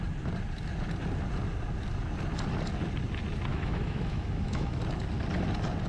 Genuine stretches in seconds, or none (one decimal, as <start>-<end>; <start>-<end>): 0.0-3.5; 4.8-5.9